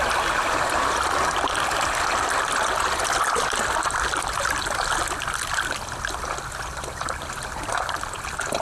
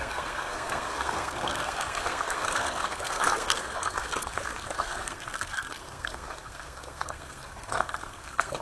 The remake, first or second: second